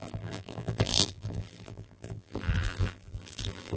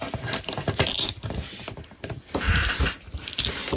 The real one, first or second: second